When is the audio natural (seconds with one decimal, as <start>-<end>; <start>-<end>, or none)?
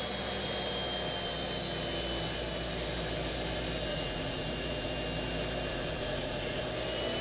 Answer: 0.0-3.9; 4.9-5.7; 6.6-7.2